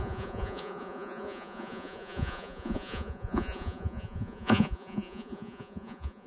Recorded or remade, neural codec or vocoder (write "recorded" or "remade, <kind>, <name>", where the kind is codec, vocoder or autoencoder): remade, vocoder, Vocos